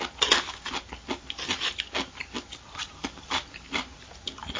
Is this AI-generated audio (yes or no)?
no